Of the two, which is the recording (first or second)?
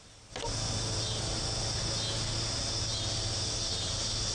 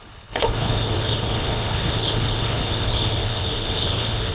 first